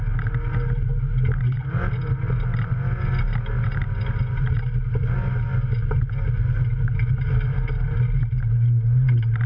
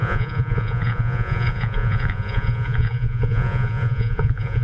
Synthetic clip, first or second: second